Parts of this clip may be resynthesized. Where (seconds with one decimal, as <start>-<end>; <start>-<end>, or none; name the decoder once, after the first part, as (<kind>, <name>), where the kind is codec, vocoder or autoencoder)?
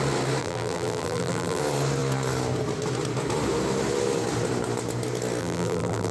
0.4-1.6 (vocoder, BigVGAN v2); 5.4-6.1